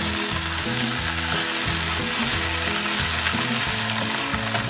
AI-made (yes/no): no